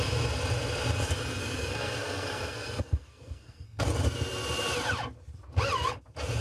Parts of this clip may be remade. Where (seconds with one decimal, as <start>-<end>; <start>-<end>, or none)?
1.4-3.8